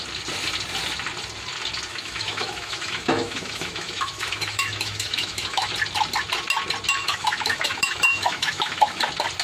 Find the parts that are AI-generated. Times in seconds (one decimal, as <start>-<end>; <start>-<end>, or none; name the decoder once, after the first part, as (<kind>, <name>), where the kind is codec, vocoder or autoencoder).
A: 1.9-5.7 (autoencoder, DAC-VAE); 7.0-9.0